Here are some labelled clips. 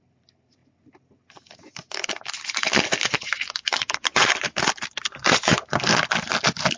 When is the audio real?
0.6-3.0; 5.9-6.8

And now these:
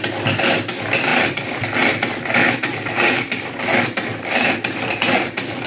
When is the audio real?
0.0-1.1; 2.1-5.7

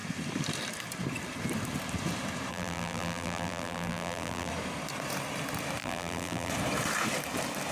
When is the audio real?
0.0-2.5; 4.5-5.8; 6.5-7.7

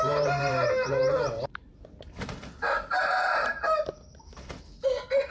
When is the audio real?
1.7-3.0; 3.5-4.8